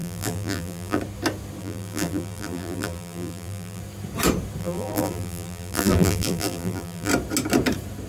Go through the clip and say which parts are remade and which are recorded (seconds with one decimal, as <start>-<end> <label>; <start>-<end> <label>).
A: 0.0-1.0 remade; 1.0-1.6 recorded; 1.6-3.8 remade; 3.8-4.6 recorded; 4.6-7.1 remade; 7.1-8.1 recorded